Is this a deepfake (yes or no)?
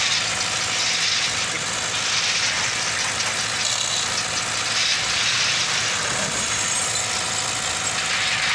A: no